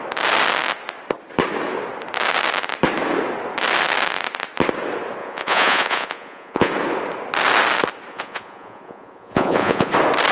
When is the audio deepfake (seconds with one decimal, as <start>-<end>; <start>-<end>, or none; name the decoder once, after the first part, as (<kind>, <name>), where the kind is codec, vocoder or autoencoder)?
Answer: 5.2-6.7 (vocoder, Vocos); 8.1-9.9